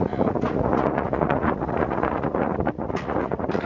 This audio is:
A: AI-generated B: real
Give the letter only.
A